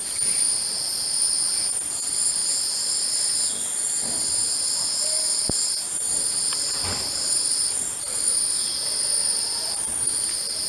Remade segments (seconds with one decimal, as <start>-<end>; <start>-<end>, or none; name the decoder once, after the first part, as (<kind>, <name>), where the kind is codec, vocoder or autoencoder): 0.0-2.4 (vocoder, BigVGAN v2); 6.1-10.7